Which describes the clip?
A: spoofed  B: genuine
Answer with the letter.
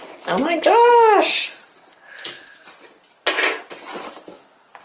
B